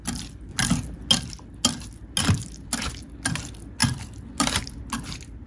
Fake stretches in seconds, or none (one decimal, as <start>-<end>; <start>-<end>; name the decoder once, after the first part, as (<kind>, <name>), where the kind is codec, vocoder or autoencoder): 3.8-4.9 (vocoder, BigVGAN v2)